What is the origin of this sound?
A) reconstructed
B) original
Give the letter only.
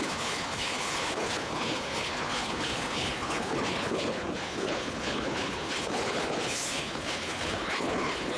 A